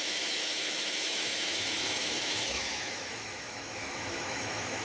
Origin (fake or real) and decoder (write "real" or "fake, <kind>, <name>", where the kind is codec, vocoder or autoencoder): fake, autoencoder, DAC-VAE